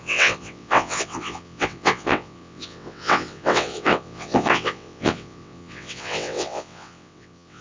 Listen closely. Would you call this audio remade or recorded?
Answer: remade